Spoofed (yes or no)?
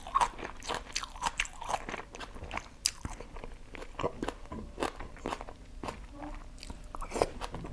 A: no